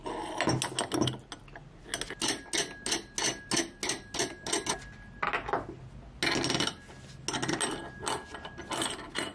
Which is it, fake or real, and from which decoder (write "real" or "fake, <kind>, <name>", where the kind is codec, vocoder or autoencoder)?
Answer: real